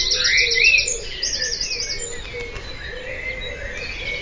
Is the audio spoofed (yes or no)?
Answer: no